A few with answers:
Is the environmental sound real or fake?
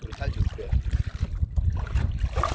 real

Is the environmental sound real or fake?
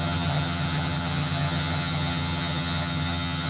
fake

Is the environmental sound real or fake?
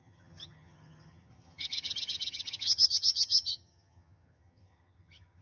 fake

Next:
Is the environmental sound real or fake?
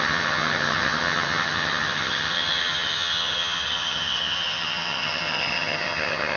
fake